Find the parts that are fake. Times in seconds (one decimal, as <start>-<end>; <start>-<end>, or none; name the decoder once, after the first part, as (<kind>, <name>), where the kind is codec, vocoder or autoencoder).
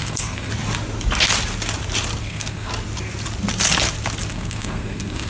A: 0.0-0.5 (codec, SNAC); 2.2-2.7; 4.3-5.3